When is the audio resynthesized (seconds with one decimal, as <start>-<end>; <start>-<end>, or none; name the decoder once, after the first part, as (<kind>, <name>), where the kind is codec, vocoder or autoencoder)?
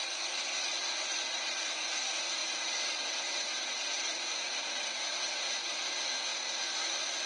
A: 0.7-1.7 (vocoder, BigVGAN v2); 2.4-4.8